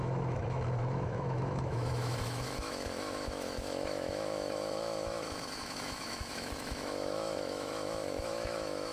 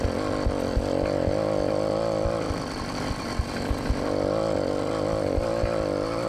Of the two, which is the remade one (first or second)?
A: first